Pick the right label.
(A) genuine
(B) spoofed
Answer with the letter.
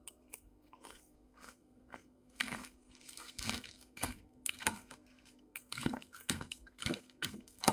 B